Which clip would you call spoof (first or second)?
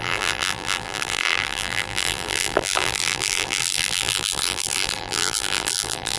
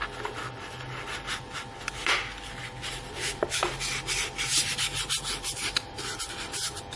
first